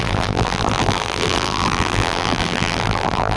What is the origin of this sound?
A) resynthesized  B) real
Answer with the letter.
A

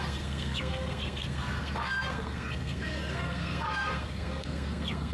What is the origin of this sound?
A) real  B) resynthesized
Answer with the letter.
B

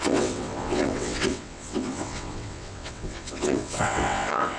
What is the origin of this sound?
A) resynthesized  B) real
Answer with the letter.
A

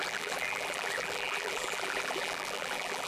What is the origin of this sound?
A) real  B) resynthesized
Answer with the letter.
B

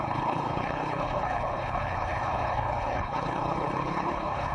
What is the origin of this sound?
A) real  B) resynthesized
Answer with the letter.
B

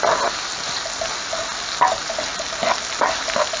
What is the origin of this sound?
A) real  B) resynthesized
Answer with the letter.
A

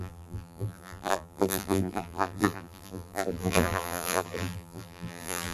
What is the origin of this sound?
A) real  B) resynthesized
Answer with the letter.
B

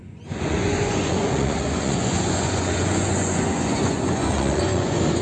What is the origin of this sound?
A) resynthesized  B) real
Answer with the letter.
A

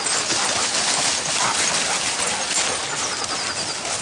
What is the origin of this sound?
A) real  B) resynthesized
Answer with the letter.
A